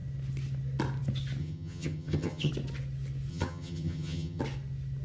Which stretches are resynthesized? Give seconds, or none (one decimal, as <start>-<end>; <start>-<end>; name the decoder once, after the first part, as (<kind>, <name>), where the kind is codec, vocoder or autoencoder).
1.4-2.5 (vocoder, HiFi-GAN); 3.3-4.4